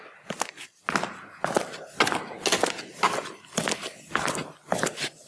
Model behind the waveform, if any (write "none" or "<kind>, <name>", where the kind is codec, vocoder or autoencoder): none